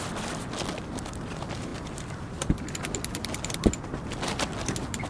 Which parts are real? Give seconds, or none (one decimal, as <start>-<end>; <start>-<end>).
0.0-5.1